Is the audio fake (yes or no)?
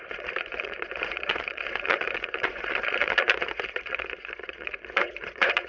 yes